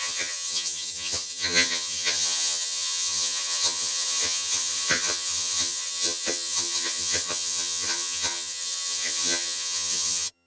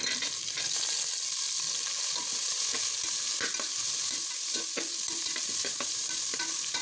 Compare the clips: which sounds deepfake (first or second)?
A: first